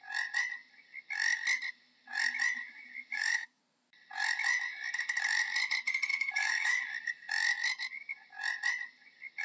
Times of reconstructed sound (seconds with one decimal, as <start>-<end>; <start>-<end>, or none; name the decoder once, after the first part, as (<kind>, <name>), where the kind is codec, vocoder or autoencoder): 3.1-3.6 (codec, DAC); 6.1-6.8